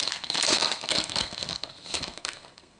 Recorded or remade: remade